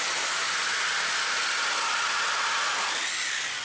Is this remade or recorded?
recorded